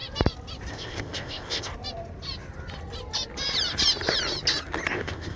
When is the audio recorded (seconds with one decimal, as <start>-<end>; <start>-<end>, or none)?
0.0-0.7; 1.7-4.9